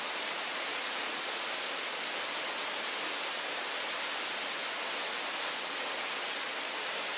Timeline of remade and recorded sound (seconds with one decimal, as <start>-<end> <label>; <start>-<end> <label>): 0.0-0.7 recorded; 0.7-1.5 remade; 1.5-7.2 recorded